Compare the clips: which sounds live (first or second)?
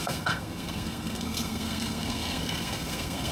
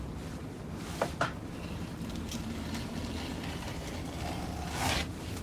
second